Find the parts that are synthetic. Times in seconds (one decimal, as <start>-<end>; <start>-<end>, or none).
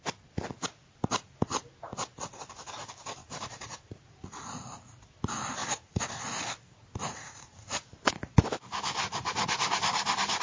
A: 3.2-4.2; 5.6-6.1; 7.0-7.8